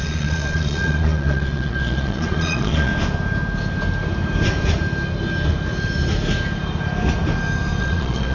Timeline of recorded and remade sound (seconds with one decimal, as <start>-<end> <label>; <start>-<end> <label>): 0.0-2.9 remade; 2.9-7.8 recorded; 7.8-8.3 remade